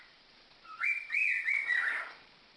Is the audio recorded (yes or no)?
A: no